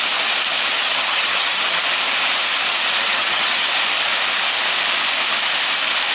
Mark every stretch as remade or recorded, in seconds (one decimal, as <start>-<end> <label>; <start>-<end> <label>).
0.0-0.7 recorded; 0.7-1.8 remade; 1.8-3.0 recorded; 3.0-3.7 remade; 3.7-6.1 recorded